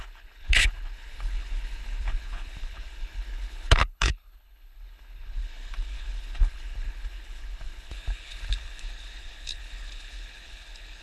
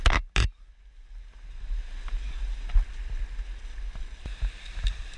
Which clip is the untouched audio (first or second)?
second